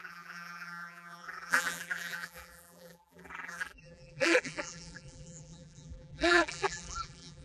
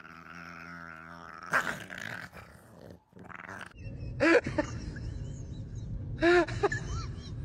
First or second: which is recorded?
second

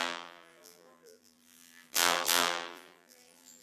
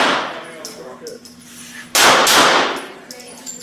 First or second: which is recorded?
second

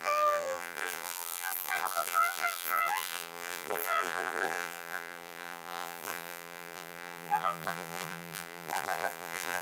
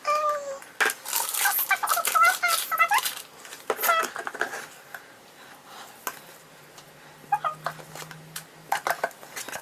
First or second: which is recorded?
second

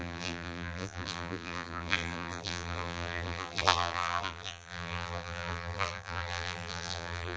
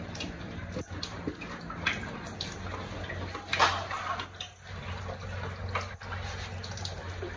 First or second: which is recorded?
second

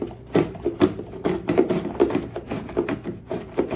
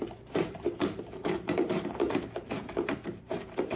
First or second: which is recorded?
first